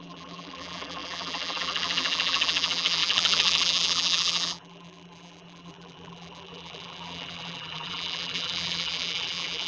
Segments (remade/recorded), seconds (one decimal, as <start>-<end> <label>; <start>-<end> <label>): 0.0-9.7 remade